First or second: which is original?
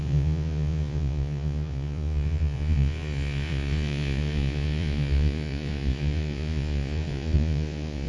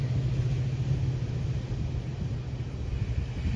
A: second